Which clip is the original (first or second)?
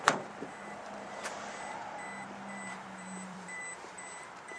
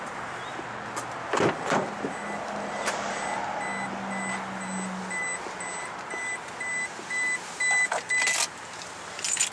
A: second